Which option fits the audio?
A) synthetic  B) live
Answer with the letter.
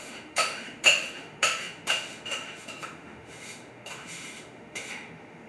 A